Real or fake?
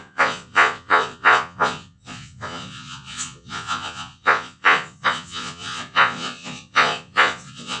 fake